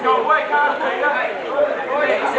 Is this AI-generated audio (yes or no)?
no